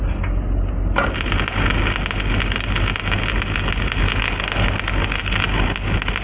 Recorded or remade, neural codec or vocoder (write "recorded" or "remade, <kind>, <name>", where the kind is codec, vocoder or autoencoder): recorded